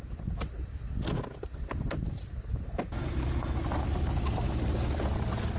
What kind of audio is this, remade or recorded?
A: recorded